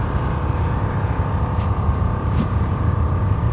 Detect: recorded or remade recorded